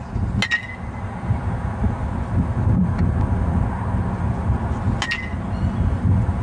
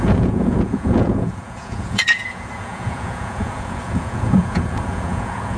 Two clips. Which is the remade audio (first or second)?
second